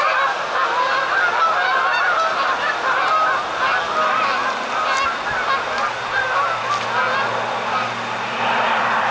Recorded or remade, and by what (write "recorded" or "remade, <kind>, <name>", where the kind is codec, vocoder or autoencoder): recorded